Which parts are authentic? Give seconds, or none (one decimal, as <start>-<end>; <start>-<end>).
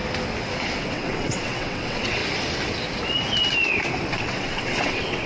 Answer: 0.0-0.8; 2.2-4.1